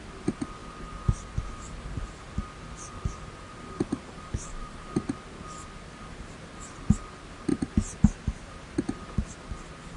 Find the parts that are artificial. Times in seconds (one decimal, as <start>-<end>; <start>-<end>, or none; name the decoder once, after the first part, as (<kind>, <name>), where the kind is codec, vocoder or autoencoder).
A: 0.6-4.6 (vocoder, BigVGAN v2)